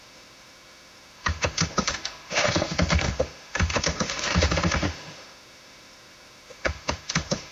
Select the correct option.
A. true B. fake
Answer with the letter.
B